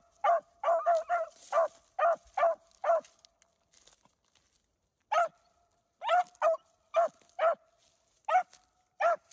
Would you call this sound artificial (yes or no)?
no